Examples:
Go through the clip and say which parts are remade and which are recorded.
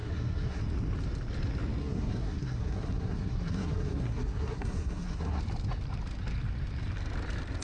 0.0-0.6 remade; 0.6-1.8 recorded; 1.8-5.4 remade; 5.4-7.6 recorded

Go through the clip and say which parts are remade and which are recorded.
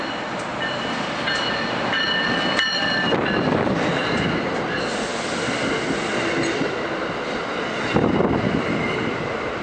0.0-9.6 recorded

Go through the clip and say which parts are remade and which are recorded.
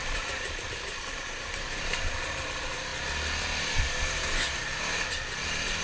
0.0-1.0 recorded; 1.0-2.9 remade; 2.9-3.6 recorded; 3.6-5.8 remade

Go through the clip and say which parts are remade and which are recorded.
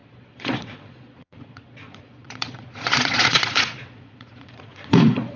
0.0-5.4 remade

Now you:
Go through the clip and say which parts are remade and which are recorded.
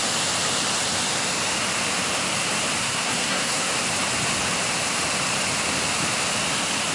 0.0-2.8 recorded; 2.8-3.7 remade; 3.7-6.9 recorded